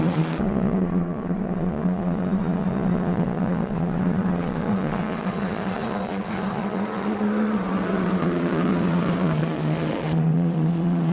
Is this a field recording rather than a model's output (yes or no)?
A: no